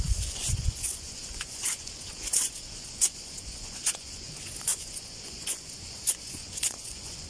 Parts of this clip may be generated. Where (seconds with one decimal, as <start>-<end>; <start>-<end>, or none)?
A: 0.0-7.3